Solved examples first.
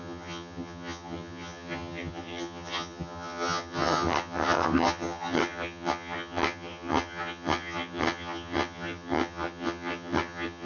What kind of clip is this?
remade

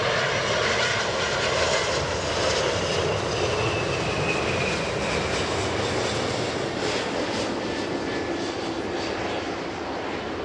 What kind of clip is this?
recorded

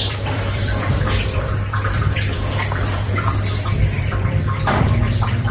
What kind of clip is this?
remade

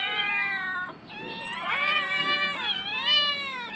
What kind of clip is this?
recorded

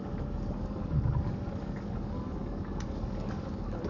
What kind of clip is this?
remade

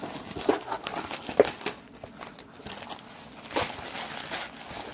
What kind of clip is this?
recorded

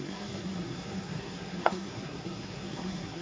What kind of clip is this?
remade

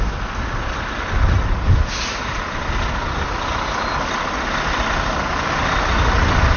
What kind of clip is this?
recorded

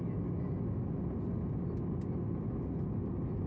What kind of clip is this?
recorded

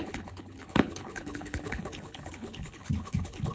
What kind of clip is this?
remade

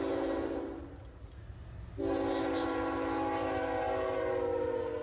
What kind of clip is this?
recorded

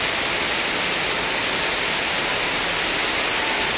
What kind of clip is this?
recorded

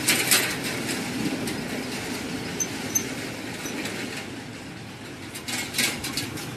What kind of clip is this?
recorded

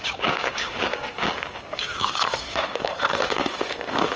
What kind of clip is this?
remade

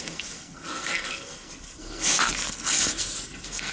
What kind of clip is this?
remade